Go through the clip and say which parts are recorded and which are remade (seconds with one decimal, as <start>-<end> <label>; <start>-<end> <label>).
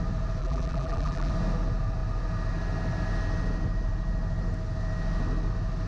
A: 0.0-0.4 recorded; 0.4-1.3 remade; 1.3-5.9 recorded